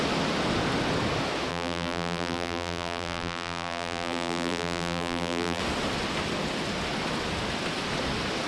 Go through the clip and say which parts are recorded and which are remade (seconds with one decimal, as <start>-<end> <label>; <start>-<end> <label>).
0.0-1.5 recorded; 1.5-5.6 remade; 5.6-8.5 recorded